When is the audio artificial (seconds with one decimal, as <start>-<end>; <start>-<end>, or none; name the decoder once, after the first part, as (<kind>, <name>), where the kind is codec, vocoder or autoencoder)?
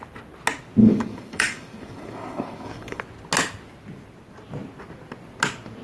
0.8-3.0 (codec, DAC)